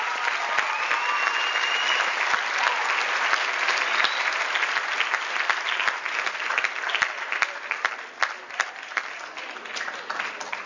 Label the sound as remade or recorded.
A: recorded